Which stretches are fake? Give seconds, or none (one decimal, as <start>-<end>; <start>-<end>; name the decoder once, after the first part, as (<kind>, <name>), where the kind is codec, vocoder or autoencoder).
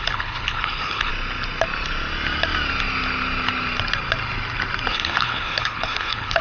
0.0-1.1 (codec, HILCodec); 4.9-6.4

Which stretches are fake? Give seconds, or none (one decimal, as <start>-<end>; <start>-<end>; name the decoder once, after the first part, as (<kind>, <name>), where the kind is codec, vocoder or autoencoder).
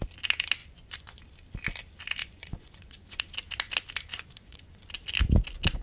0.6-1.2 (vocoder, Vocos); 2.2-3.2; 4.1-4.8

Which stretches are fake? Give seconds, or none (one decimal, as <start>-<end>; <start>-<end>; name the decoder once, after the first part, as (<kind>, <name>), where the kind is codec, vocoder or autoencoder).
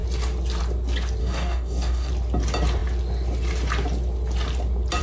1.2-2.1 (codec, DAC)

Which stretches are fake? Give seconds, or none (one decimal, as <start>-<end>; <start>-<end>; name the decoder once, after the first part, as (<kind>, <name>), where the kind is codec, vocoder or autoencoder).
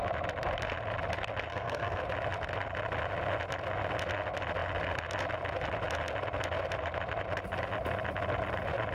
1.5-2.0 (codec, SNAC)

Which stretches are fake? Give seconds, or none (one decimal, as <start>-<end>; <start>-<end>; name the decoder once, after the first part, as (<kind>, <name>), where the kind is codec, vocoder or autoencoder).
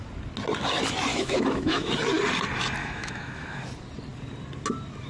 1.1-1.9 (autoencoder, DAC-VAE); 2.8-3.6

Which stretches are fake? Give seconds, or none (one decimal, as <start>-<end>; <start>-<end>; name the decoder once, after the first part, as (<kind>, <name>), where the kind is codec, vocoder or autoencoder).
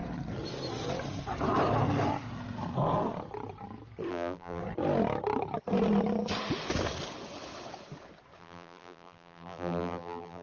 4.1-4.6 (vocoder, BigVGAN v2); 8.4-10.4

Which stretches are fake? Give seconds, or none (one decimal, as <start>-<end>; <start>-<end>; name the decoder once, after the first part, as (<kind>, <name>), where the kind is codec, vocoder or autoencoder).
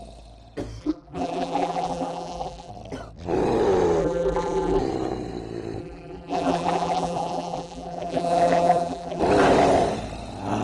0.8-2.7 (vocoder, BigVGAN v2); 4.0-4.8; 5.8-9.2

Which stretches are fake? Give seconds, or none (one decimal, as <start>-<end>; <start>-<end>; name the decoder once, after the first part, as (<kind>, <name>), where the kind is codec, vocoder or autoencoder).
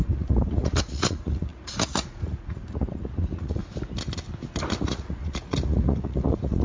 0.0-3.6 (vocoder, Vocos); 4.8-6.6